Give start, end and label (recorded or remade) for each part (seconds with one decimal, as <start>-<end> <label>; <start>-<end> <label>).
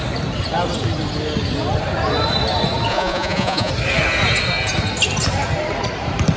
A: 0.0-2.9 recorded; 2.9-3.7 remade; 3.7-6.4 recorded